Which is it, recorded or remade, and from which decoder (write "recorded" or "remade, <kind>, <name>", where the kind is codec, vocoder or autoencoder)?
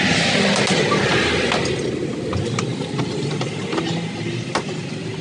recorded